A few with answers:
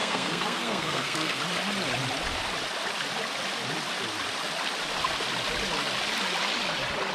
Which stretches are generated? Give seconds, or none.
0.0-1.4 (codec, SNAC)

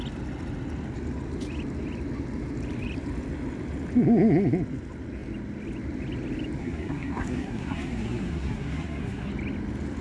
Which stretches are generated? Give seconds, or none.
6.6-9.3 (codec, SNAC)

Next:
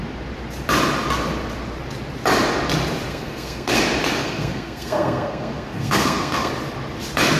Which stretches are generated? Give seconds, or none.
3.1-3.8 (codec, SNAC); 4.2-6.5

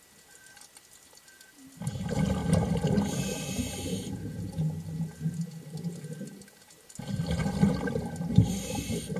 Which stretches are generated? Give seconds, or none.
none

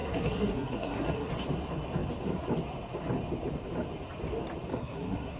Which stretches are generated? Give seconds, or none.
0.0-1.3 (codec, SNAC); 4.7-5.4

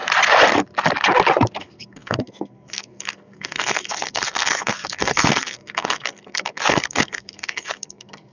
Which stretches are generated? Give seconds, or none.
1.6-8.3 (codec, SNAC)